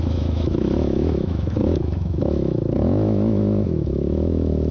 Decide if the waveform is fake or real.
fake